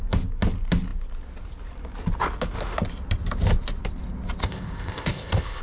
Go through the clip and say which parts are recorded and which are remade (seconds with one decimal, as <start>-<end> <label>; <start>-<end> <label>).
0.0-4.4 recorded; 4.4-5.6 remade